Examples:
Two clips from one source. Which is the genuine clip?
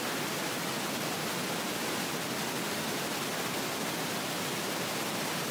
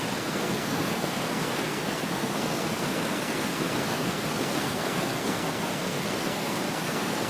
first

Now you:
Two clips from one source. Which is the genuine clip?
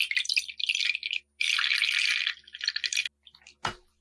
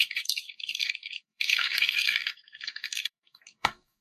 first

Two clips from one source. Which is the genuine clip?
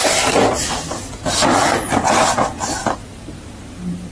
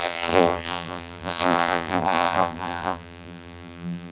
first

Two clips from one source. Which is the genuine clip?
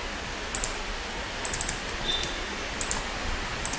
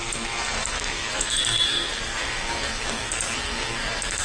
first